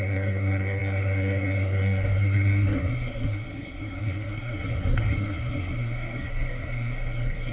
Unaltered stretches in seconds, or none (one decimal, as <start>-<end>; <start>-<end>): none